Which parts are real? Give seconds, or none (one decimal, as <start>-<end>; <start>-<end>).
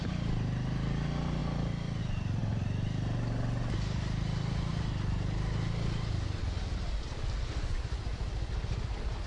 0.0-9.3